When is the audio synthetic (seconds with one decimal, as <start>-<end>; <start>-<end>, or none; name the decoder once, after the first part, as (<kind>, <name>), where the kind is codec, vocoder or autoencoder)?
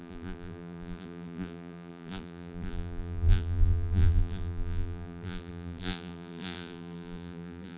0.0-7.8 (vocoder, BigVGAN v2)